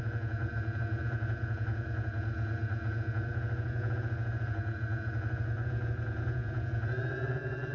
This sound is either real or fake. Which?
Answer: fake